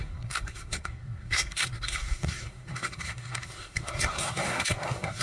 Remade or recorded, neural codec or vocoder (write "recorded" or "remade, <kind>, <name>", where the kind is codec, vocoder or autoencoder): remade, codec, SNAC